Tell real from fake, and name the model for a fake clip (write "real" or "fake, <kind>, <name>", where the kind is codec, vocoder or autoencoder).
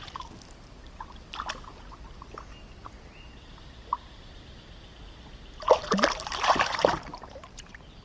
fake, vocoder, BigVGAN v2